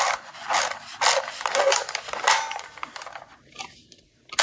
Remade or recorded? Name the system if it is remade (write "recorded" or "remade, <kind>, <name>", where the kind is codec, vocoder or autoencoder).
recorded